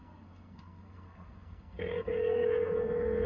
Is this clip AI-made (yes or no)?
yes